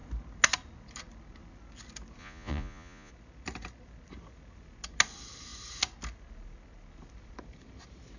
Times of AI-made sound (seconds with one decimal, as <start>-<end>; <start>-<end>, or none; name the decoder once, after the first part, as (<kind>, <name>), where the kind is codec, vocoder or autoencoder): 2.2-3.1 (vocoder, Vocos)